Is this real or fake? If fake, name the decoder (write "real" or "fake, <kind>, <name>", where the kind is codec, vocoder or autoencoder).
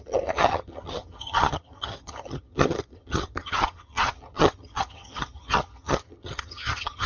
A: fake, vocoder, HiFi-GAN